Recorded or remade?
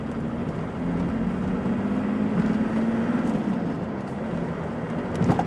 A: recorded